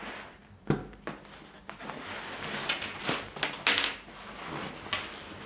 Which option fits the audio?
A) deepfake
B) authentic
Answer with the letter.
B